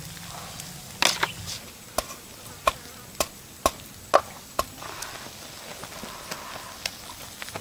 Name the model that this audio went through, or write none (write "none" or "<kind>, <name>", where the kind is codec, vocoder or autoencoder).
none